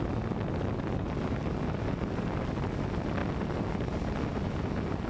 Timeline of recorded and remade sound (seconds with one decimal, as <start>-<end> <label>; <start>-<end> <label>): 0.0-5.1 recorded